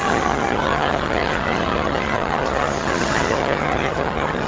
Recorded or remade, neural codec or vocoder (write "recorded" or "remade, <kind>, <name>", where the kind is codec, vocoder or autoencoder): remade, vocoder, HiFi-GAN